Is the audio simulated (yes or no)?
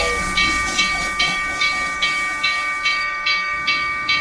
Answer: yes